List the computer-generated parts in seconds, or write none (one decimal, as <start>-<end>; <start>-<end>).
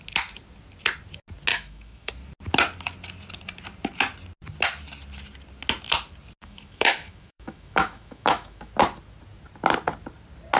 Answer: 1.5-2.1; 6.4-8.7